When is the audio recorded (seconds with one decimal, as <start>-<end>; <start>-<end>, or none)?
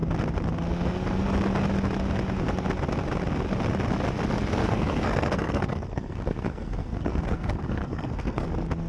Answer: 0.0-4.6; 8.5-8.9